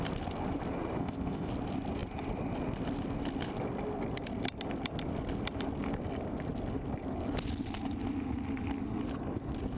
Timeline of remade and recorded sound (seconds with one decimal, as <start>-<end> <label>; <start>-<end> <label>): 0.0-1.0 recorded; 1.0-1.5 remade; 1.5-9.8 recorded